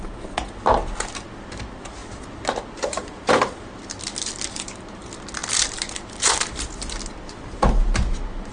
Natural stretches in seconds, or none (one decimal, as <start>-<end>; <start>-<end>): 0.0-8.5